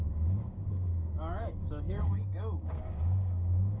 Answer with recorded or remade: remade